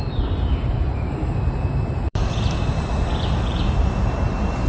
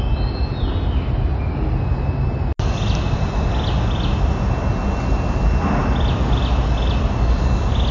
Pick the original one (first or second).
second